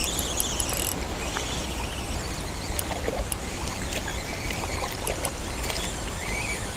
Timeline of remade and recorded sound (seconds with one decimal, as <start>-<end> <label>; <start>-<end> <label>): 0.0-4.1 recorded; 4.1-6.8 remade